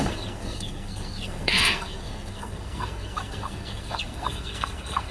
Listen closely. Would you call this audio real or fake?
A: fake